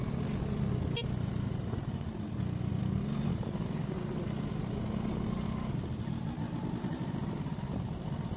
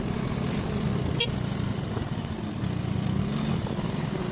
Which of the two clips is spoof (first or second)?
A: second